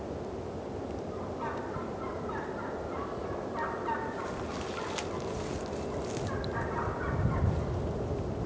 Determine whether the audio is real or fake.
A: real